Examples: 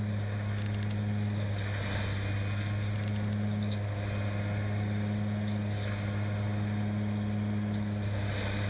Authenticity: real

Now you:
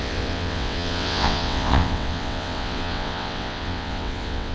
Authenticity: fake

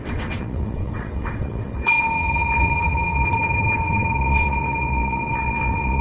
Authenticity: fake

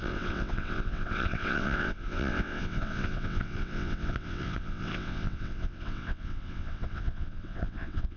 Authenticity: fake